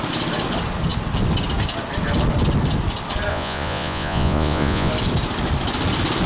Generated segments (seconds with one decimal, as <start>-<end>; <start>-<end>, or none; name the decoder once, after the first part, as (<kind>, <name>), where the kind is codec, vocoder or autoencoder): 3.3-4.9 (vocoder, Vocos)